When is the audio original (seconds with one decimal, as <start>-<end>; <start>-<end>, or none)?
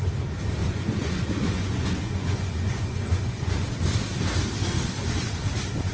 0.0-0.6; 3.7-5.9